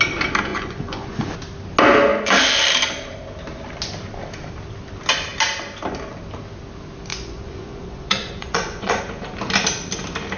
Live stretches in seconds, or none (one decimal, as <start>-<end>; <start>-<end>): 0.0-0.5; 1.3-7.1; 9.0-10.4